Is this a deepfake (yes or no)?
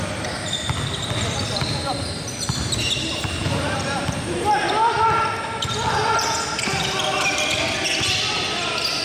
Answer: no